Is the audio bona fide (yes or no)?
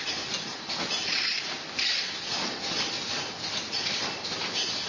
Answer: yes